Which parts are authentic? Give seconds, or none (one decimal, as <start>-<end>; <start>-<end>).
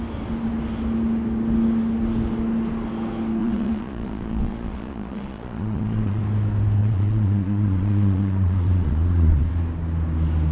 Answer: 0.0-3.4; 6.2-6.8; 9.5-10.5